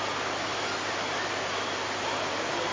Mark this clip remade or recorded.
recorded